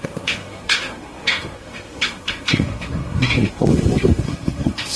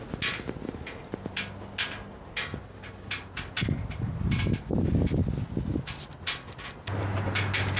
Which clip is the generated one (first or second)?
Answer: first